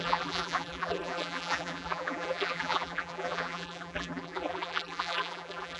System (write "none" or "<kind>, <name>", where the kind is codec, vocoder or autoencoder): vocoder, BigVGAN v2